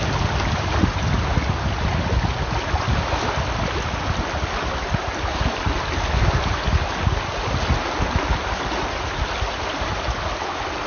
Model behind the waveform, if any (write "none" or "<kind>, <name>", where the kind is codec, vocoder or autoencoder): none